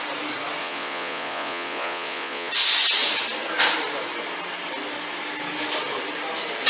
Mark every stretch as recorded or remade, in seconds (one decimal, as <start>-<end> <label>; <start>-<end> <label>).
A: 0.0-0.6 recorded; 0.6-2.5 remade; 2.5-6.7 recorded